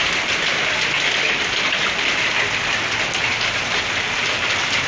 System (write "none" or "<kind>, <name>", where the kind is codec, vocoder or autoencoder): none